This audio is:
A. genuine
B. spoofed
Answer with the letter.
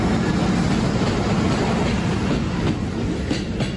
A